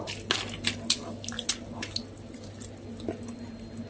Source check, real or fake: real